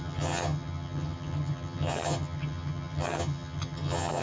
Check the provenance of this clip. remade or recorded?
remade